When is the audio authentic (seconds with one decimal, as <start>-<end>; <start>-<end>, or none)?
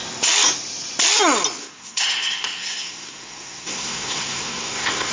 0.0-1.6